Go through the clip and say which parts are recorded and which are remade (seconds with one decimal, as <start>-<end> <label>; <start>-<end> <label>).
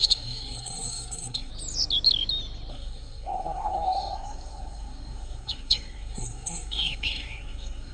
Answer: 0.0-1.5 remade; 1.5-2.7 recorded; 2.7-7.9 remade